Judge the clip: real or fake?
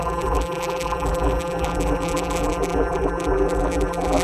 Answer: fake